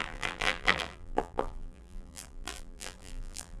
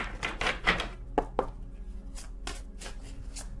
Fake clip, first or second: first